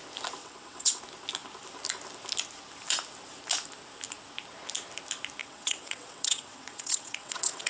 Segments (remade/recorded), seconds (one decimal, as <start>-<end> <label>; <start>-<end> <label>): 0.0-0.4 recorded; 0.4-1.0 remade; 1.0-5.4 recorded; 5.4-7.7 remade